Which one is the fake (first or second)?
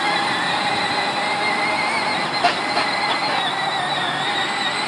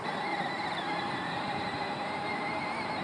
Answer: second